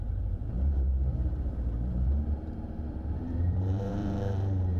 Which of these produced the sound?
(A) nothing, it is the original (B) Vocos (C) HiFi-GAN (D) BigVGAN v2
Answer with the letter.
D